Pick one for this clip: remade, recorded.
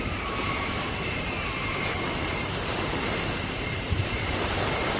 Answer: remade